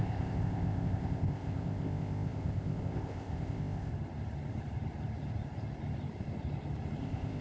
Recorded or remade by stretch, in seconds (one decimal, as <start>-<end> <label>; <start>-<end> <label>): 0.0-3.9 remade; 3.9-7.0 recorded; 7.0-7.4 remade